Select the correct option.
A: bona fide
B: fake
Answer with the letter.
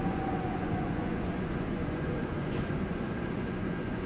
B